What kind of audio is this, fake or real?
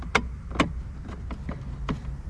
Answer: real